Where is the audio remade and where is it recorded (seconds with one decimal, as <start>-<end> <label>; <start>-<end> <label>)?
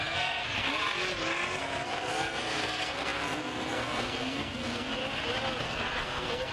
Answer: 0.0-0.7 remade; 0.7-1.6 recorded; 1.6-5.0 remade; 5.0-5.6 recorded; 5.6-6.5 remade